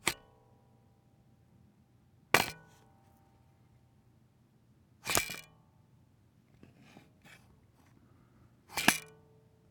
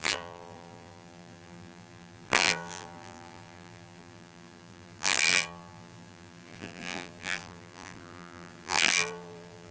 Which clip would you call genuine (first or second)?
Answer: first